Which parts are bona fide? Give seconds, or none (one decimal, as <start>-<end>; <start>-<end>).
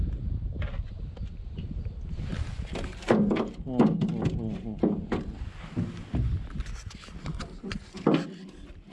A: 0.0-8.9